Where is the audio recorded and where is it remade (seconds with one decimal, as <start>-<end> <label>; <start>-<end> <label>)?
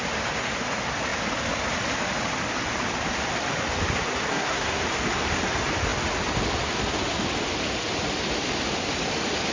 0.0-4.3 recorded; 4.3-4.8 remade; 4.8-9.5 recorded